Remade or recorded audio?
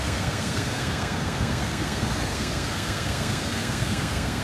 remade